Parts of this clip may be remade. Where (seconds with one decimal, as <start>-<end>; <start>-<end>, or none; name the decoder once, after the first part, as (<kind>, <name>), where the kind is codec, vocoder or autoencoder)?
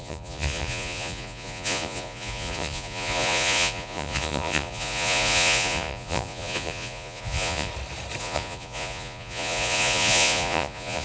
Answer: 0.0-7.7 (vocoder, Vocos); 8.2-11.0